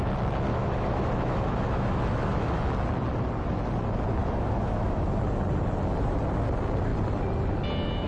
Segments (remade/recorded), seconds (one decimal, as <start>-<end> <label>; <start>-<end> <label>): 0.0-0.5 recorded; 0.5-2.6 remade; 2.6-4.2 recorded; 4.2-5.1 remade; 5.1-8.1 recorded